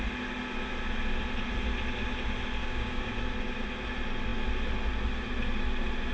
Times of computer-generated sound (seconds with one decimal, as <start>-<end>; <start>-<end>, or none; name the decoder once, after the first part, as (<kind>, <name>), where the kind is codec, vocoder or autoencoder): 2.6-3.2 (codec, DAC)